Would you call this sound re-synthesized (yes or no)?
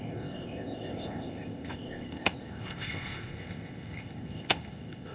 yes